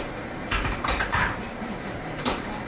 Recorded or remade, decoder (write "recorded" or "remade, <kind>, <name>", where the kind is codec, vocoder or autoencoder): remade, vocoder, BigVGAN v2